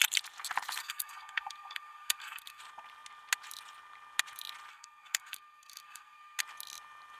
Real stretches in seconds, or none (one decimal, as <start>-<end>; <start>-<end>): 0.0-0.8; 2.6-4.7; 6.4-7.2